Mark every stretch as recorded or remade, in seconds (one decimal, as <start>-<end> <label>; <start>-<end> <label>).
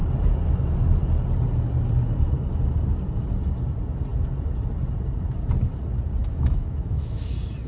0.0-6.2 recorded; 6.2-7.3 remade; 7.3-7.7 recorded